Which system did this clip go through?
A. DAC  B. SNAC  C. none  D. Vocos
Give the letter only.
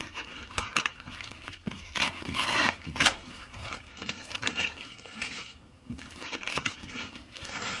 B